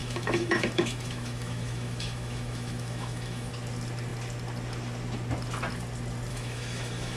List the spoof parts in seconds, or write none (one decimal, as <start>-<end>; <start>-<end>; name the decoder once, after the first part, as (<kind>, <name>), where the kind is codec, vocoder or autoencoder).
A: 0.0-3.5 (autoencoder, DAC-VAE); 6.3-7.2